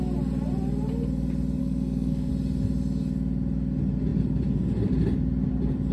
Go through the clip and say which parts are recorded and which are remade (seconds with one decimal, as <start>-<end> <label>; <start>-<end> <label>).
0.0-1.6 recorded; 1.6-2.3 remade; 2.3-5.9 recorded